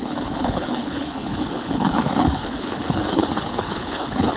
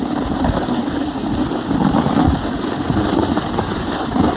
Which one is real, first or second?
second